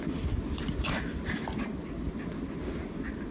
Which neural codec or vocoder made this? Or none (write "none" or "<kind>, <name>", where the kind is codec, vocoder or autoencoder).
none